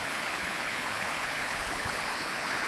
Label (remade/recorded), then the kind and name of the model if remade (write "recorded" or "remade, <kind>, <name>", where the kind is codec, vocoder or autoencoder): remade, codec, HILCodec